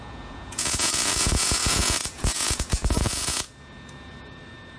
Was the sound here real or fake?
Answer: fake